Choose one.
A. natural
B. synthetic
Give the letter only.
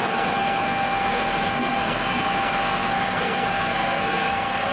B